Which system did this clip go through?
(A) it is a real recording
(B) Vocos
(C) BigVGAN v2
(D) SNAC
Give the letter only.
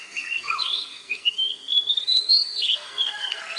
D